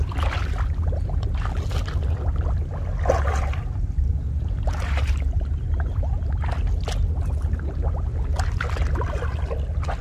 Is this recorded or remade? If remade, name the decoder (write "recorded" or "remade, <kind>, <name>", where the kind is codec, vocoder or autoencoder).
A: recorded